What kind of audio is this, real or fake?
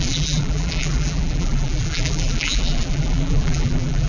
fake